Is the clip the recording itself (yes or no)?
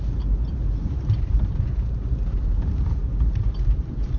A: no